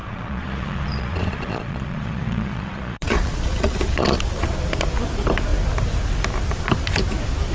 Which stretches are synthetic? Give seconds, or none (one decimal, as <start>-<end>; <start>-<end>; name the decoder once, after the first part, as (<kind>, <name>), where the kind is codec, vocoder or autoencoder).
0.0-4.5 (vocoder, Vocos)